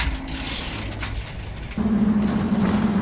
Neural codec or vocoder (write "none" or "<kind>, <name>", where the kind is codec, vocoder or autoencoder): none